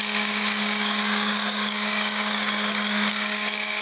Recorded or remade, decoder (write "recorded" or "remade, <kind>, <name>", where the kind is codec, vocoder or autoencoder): remade, codec, DAC